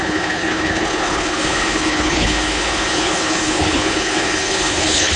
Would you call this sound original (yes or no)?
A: no